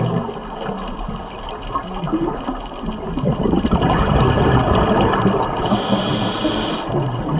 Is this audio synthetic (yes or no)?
no